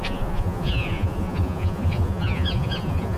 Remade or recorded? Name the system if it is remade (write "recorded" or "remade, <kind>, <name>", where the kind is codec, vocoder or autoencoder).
remade, vocoder, Vocos